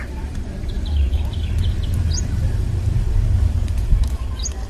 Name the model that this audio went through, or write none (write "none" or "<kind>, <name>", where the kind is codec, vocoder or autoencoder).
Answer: vocoder, BigVGAN v2